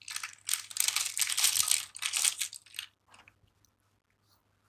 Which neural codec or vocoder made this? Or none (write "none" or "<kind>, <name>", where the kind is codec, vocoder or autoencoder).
none